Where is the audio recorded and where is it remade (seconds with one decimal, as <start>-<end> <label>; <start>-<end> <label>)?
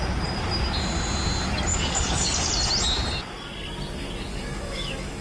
0.0-1.7 recorded; 1.7-2.5 remade; 2.5-4.3 recorded; 4.3-5.2 remade